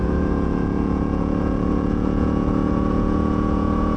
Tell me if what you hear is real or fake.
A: fake